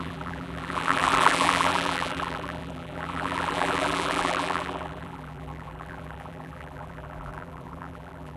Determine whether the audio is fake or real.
fake